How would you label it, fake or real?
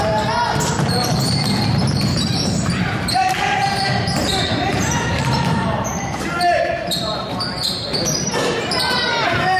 fake